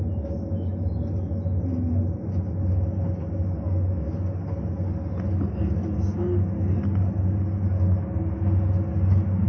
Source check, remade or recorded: recorded